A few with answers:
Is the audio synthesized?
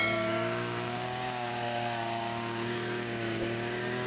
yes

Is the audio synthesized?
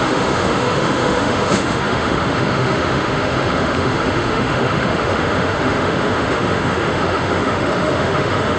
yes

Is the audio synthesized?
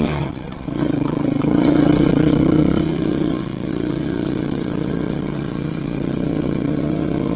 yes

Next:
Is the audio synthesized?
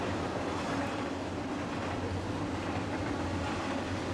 no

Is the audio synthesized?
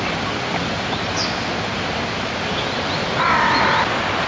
no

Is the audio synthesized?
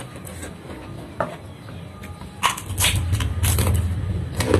no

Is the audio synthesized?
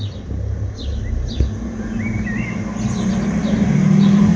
no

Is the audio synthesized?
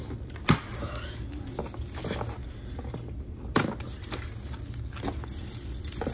no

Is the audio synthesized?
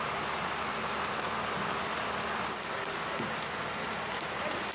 no